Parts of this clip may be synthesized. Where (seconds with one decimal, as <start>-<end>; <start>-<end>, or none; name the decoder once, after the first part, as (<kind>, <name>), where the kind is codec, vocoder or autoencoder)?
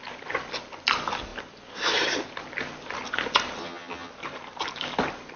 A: 3.6-4.1 (vocoder, HiFi-GAN)